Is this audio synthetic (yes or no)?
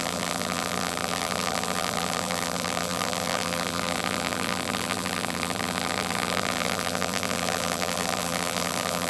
yes